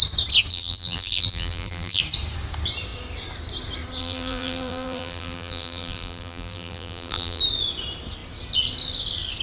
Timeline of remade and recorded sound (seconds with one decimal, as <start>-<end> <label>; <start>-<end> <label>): 0.0-0.5 recorded; 0.5-2.0 remade; 2.0-4.0 recorded; 4.0-7.4 remade; 7.4-9.4 recorded